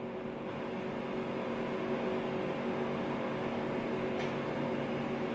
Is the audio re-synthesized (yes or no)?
no